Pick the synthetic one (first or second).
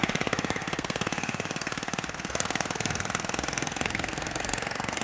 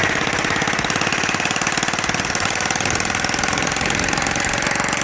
first